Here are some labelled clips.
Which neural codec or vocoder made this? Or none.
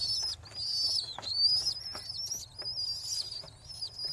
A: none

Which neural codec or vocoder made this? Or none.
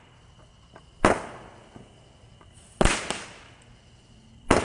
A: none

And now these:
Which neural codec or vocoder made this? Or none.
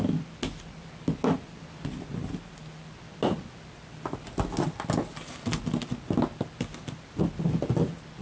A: none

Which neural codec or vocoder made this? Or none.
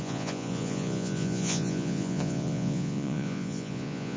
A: vocoder, Vocos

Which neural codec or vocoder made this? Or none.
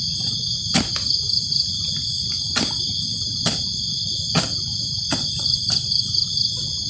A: none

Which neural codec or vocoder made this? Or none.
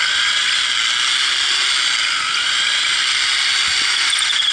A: none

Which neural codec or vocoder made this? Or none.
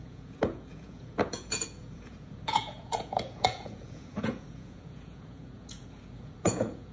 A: vocoder, Vocos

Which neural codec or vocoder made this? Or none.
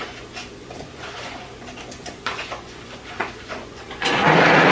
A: vocoder, Vocos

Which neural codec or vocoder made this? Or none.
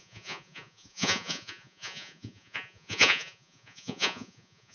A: vocoder, Vocos